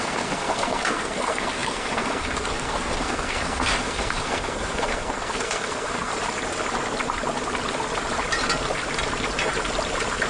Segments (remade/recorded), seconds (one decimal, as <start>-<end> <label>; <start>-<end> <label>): 0.0-6.1 remade; 6.1-10.3 recorded